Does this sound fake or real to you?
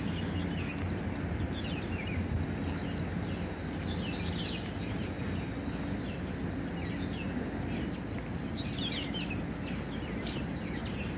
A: real